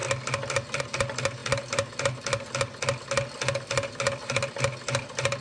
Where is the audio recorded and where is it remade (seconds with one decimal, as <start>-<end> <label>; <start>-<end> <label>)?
0.0-5.4 recorded

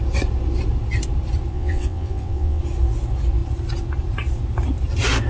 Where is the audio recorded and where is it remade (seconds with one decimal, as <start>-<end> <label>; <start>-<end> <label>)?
0.0-1.5 recorded; 1.5-2.6 remade; 2.6-5.3 recorded